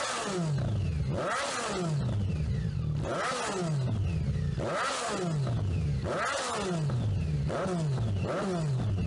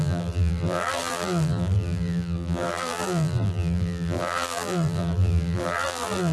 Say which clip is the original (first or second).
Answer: first